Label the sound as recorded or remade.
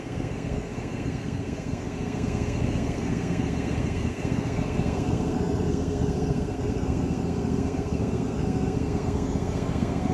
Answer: remade